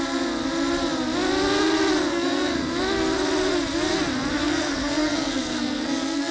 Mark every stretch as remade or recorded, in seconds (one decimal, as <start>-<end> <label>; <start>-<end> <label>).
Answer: 0.0-2.1 recorded; 2.1-2.8 remade; 2.8-4.3 recorded; 4.3-6.3 remade